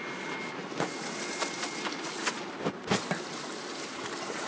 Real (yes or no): yes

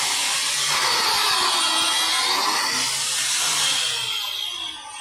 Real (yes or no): yes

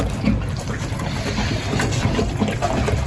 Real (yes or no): yes